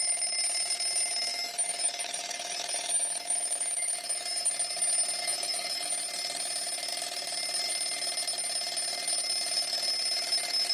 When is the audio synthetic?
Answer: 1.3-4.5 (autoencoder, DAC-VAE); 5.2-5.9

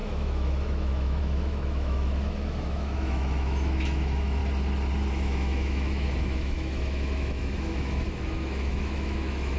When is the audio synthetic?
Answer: 0.0-4.4 (autoencoder, DAC-VAE); 5.1-9.6

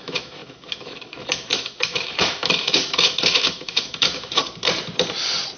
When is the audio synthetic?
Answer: 0.0-4.4 (autoencoder, DAC-VAE)

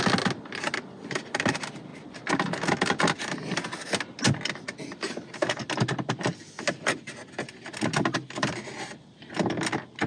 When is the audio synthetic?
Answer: none

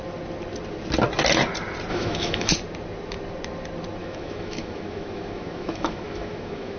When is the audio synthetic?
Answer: 1.9-2.5 (autoencoder, DAC-VAE); 4.0-6.8

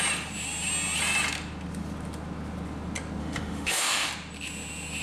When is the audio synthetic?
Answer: 3.2-4.1 (autoencoder, DAC-VAE)